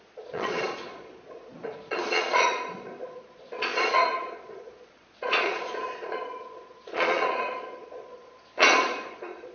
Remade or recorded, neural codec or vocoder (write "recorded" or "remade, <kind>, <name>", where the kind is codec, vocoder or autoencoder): remade, vocoder, Vocos